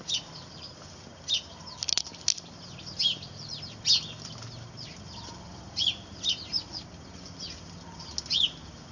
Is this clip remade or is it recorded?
recorded